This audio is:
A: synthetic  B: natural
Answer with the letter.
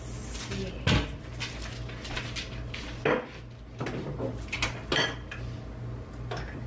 B